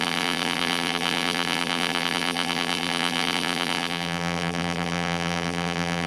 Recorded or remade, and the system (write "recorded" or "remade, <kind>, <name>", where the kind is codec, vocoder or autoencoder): remade, vocoder, BigVGAN v2